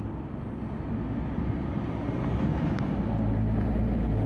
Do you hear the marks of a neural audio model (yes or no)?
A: no